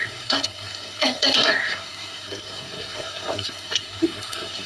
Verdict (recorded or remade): remade